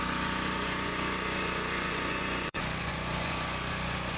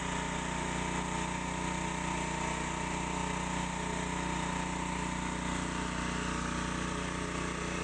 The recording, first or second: second